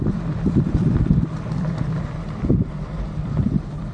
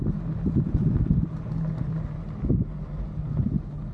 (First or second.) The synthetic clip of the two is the first